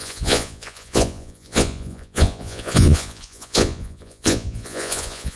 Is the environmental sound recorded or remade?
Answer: remade